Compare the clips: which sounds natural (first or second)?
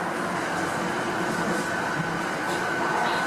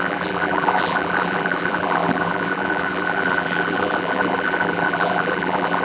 first